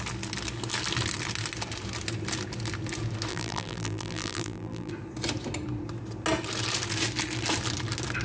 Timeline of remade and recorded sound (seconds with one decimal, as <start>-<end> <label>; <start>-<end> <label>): 0.0-3.3 recorded; 3.3-4.9 remade; 4.9-8.2 recorded